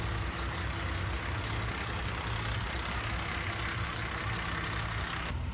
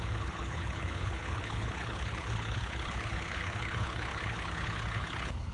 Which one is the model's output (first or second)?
second